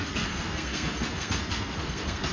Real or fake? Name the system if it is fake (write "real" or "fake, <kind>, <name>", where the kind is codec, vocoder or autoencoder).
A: fake, codec, SNAC